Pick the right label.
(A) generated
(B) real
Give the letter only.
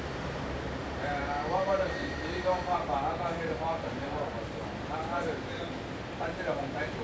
A